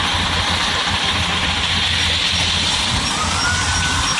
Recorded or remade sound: recorded